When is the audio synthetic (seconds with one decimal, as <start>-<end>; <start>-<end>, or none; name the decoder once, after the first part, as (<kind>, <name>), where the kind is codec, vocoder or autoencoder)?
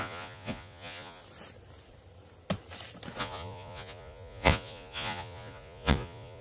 0.0-1.2 (vocoder, Vocos); 3.2-6.4